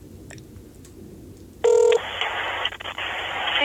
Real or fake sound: real